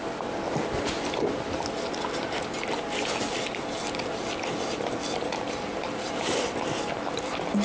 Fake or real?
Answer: real